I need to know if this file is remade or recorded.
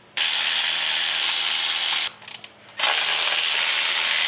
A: recorded